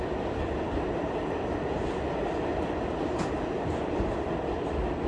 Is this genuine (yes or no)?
yes